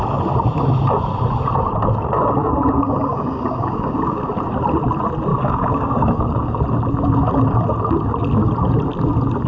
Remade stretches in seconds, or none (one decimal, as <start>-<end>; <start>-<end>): 3.1-4.3; 5.3-6.6